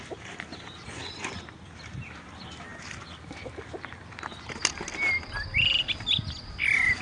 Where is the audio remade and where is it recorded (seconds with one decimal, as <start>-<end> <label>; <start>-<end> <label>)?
0.0-7.0 recorded

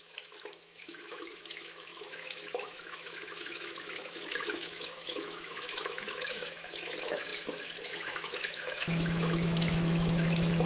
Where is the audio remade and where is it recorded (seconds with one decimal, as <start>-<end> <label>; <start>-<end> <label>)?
0.0-10.7 remade